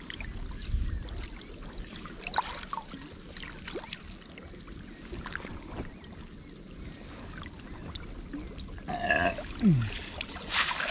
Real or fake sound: real